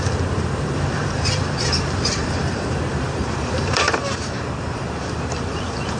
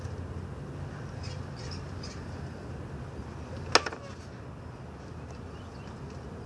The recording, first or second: second